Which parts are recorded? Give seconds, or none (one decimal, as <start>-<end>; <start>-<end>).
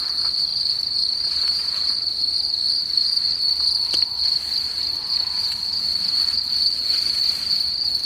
0.0-0.5; 5.0-5.9; 6.5-8.0